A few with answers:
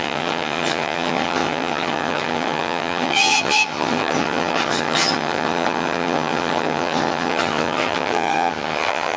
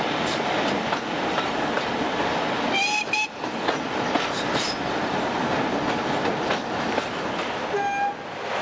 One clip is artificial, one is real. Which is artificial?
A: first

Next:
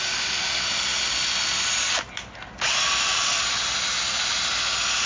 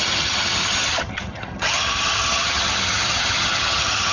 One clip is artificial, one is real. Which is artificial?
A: second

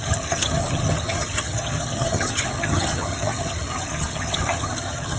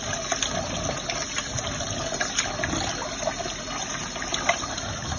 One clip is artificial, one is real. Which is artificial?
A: first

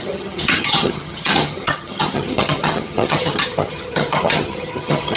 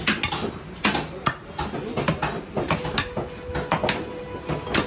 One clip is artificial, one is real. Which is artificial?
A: first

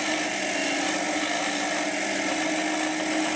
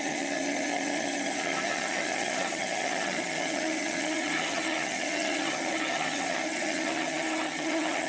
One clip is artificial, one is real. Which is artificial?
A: second